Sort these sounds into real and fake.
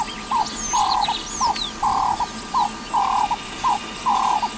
real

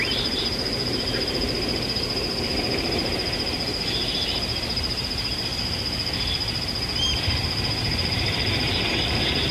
fake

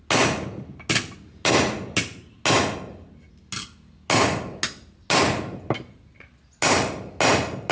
real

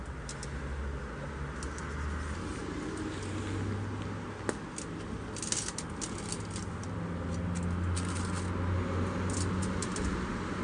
real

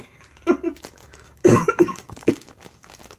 fake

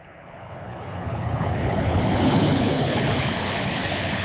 fake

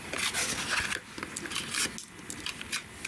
real